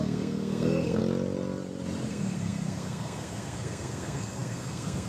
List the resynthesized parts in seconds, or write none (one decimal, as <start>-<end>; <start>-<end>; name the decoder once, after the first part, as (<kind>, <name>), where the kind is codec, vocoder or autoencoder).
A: 0.0-1.0 (codec, SNAC); 2.1-5.1